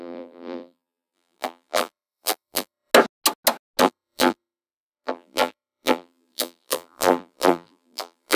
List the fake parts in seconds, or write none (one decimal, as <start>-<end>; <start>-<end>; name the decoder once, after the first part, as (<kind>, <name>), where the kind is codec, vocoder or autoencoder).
0.0-2.9 (vocoder, BigVGAN v2); 3.8-8.4